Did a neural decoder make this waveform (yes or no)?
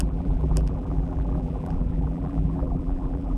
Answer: yes